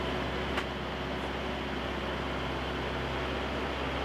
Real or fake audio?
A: real